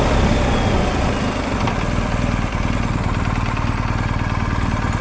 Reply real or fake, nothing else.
real